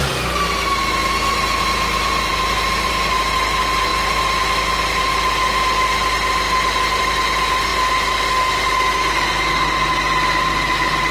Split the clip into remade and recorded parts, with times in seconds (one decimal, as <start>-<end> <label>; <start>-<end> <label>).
0.0-11.1 recorded